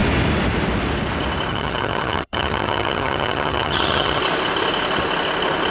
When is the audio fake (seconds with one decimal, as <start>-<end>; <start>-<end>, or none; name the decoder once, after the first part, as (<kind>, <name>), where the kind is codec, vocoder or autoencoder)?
1.5-4.2 (vocoder, HiFi-GAN)